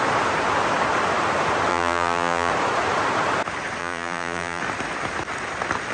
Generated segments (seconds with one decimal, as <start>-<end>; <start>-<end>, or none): 1.7-2.5; 3.8-4.6